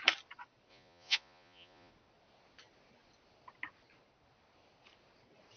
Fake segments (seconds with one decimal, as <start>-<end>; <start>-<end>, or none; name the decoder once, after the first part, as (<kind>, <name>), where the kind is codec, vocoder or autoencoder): 0.7-1.9 (vocoder, Vocos)